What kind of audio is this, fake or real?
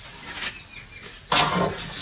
real